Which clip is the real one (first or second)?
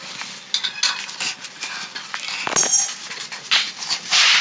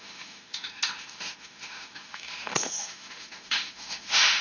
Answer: first